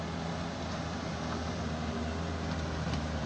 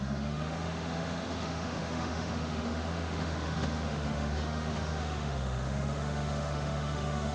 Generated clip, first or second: second